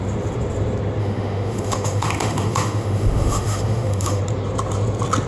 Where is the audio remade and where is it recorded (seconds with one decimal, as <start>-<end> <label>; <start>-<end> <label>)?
0.0-1.0 recorded; 1.0-4.2 remade; 4.2-5.3 recorded